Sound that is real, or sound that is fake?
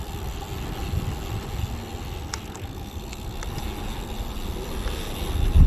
real